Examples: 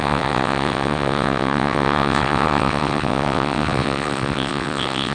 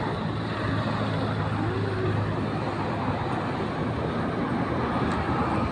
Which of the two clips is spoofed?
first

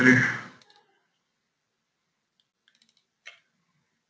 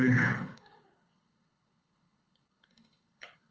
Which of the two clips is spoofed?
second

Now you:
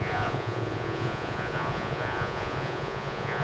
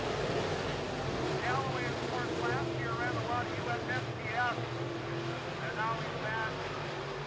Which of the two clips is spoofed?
first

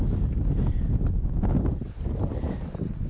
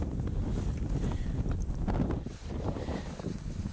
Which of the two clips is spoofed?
second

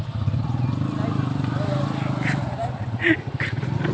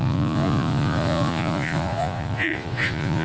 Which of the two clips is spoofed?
second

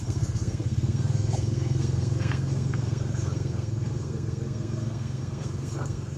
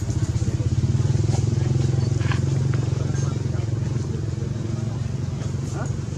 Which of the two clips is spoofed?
first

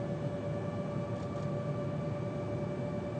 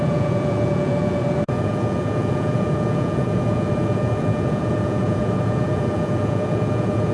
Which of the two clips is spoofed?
second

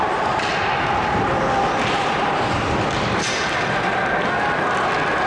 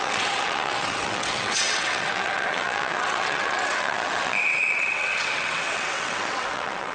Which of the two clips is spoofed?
second